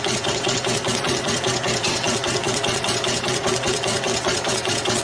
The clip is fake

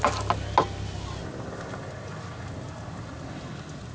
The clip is real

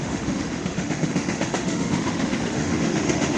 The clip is fake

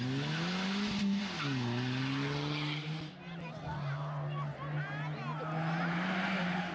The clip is real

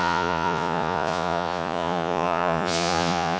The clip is fake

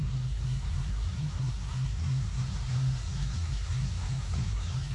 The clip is fake